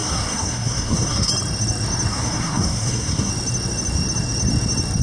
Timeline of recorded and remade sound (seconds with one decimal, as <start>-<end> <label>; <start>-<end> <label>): 0.0-1.3 remade; 1.3-2.1 recorded; 2.1-3.3 remade; 3.3-5.0 recorded